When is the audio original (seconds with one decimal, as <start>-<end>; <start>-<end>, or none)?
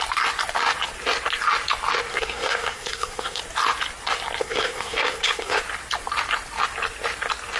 0.0-2.1; 3.4-4.4; 5.6-7.6